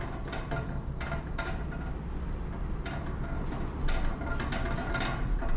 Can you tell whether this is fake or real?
real